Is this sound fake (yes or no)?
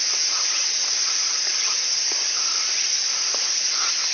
no